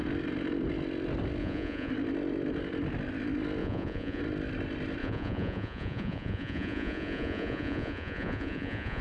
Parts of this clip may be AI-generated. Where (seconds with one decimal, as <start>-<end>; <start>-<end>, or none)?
1.4-1.9; 3.6-4.2; 5.0-9.0